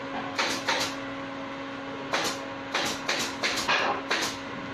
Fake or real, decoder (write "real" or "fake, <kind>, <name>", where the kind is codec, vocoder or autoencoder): real